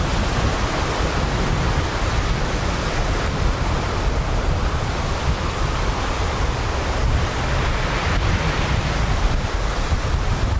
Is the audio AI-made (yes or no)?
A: no